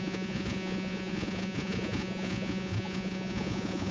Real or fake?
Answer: fake